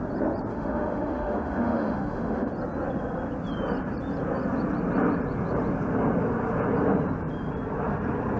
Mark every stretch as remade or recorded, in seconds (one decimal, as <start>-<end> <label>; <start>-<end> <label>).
0.0-0.5 recorded; 0.5-2.5 remade; 2.5-8.4 recorded